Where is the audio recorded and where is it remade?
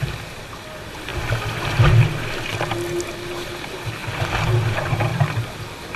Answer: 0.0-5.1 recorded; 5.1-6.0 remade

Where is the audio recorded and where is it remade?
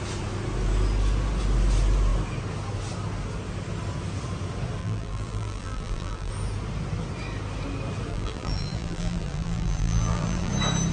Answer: 0.0-4.8 recorded; 4.8-6.3 remade; 6.3-8.1 recorded; 8.1-10.5 remade; 10.5-10.9 recorded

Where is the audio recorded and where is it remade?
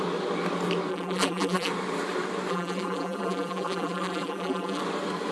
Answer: 0.0-0.9 recorded; 0.9-1.7 remade; 1.7-2.5 recorded; 2.5-4.8 remade; 4.8-5.3 recorded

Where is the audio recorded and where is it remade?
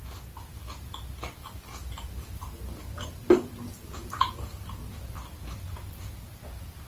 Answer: 0.0-1.4 recorded; 1.4-4.9 remade; 4.9-6.9 recorded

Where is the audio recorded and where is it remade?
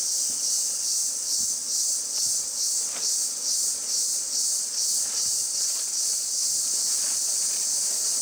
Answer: 0.0-3.8 recorded; 3.8-5.3 remade; 5.3-6.4 recorded; 6.4-7.5 remade; 7.5-8.2 recorded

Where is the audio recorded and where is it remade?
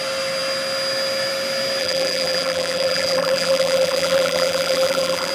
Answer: 0.0-1.8 recorded; 1.8-5.3 remade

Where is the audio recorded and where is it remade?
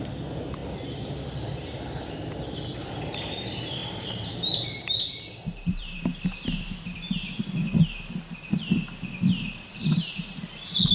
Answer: 0.0-3.8 recorded; 3.8-6.0 remade; 6.0-9.5 recorded; 9.5-10.4 remade; 10.4-10.9 recorded